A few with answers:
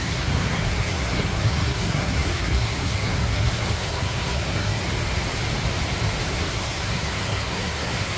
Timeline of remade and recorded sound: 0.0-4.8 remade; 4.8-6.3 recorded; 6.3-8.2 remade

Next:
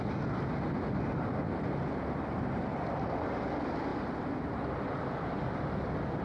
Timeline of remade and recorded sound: 0.0-6.2 recorded

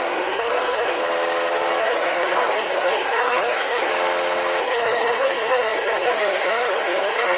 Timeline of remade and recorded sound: 0.0-1.0 remade; 1.0-1.8 recorded; 1.8-3.9 remade; 3.9-4.6 recorded; 4.6-7.4 remade

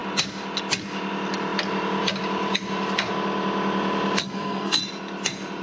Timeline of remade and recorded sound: 0.0-4.2 recorded; 4.2-4.8 remade; 4.8-5.6 recorded